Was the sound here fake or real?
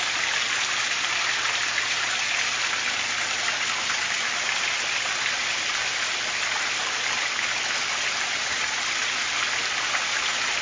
real